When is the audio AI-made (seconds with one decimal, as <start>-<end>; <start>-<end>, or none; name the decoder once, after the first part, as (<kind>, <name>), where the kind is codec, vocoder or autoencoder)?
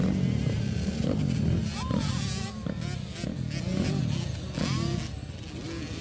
none